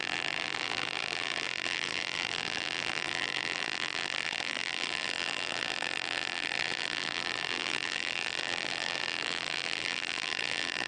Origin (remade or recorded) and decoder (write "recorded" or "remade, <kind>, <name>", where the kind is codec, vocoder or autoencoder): remade, vocoder, BigVGAN v2